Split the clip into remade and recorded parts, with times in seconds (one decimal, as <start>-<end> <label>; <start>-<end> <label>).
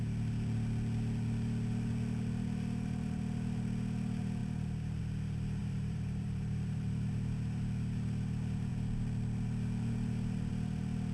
0.0-5.6 recorded; 5.6-7.1 remade; 7.1-11.1 recorded